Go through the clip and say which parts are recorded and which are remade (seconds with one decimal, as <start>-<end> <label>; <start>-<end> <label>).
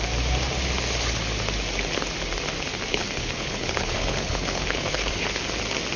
0.0-2.9 recorded; 2.9-5.4 remade; 5.4-6.0 recorded